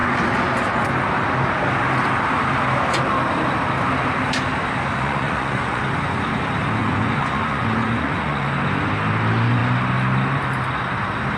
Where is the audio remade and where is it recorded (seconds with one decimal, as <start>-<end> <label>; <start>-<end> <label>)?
0.0-4.9 recorded; 4.9-5.8 remade; 5.8-6.8 recorded; 6.8-8.5 remade; 8.5-11.4 recorded